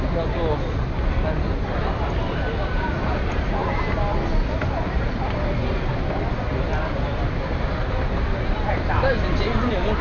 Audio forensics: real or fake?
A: real